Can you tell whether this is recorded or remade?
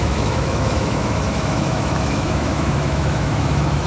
remade